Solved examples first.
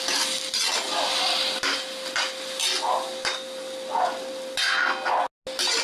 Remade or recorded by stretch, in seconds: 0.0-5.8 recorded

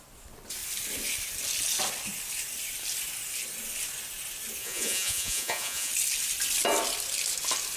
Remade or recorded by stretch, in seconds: 0.0-4.6 recorded; 4.6-5.9 remade; 5.9-7.8 recorded

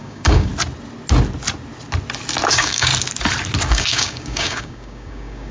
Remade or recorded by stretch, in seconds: 0.0-0.5 remade; 0.5-2.5 recorded; 2.5-2.9 remade; 2.9-3.7 recorded; 3.7-5.5 remade

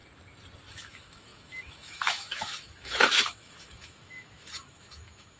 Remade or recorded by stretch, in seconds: 0.0-0.7 recorded; 0.7-5.4 remade

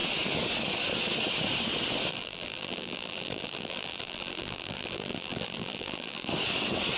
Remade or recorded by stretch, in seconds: 0.0-2.1 recorded; 2.1-6.3 remade; 6.3-7.0 recorded

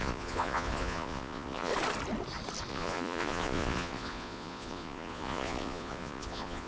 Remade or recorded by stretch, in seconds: 0.0-1.7 remade; 1.7-2.7 recorded; 2.7-6.7 remade